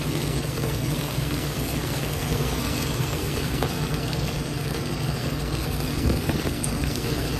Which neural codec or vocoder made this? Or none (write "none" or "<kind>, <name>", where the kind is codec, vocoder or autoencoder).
codec, SNAC